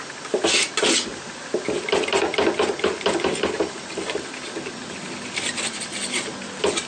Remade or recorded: recorded